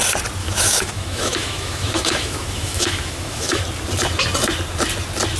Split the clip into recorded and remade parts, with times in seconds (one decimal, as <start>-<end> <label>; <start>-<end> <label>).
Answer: 0.0-0.4 recorded; 0.4-3.6 remade; 3.6-5.4 recorded